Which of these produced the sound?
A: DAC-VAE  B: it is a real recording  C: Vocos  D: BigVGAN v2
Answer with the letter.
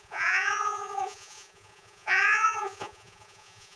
C